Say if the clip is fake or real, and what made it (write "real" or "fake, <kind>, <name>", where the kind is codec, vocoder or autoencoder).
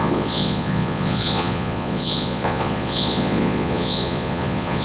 fake, vocoder, Vocos